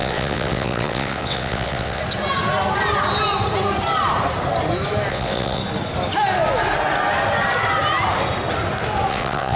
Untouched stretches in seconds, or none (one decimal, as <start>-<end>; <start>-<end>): 2.0-5.1; 5.6-9.1